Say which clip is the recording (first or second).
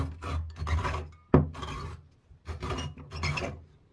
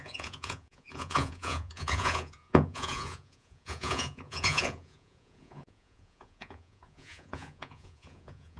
first